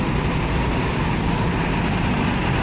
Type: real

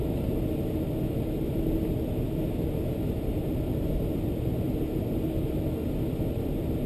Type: real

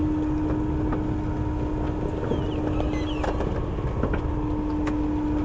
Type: real